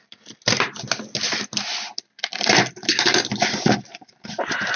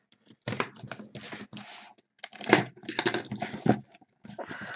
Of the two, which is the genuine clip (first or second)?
second